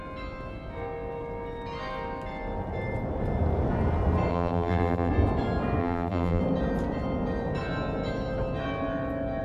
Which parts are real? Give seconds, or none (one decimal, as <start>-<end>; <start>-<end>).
0.0-4.3; 5.1-5.8; 6.4-9.4